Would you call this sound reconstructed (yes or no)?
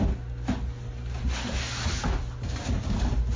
no